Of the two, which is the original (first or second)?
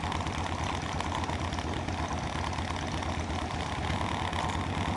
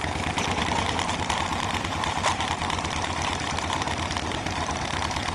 first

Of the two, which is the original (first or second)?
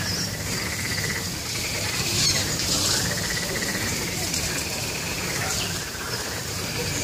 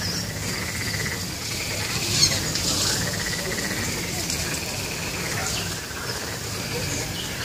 second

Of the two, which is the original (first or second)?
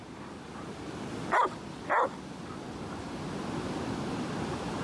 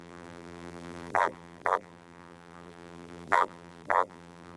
first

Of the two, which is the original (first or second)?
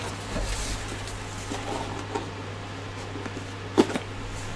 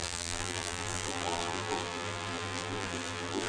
first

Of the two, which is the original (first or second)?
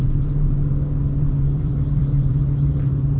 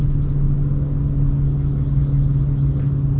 second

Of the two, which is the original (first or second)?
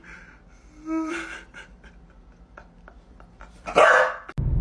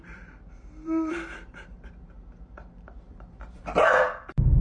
first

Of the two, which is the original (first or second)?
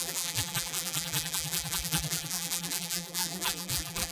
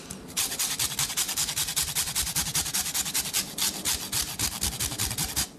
second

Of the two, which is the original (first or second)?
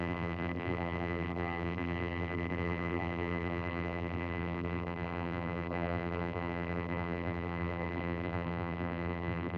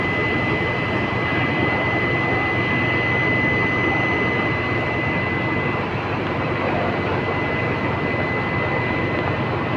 second